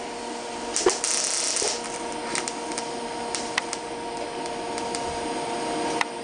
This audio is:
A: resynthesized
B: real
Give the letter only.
B